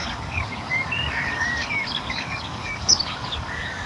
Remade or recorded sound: remade